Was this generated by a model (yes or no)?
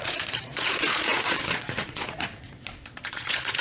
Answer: yes